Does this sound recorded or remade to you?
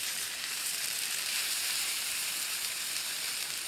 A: remade